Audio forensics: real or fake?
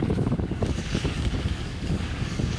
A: fake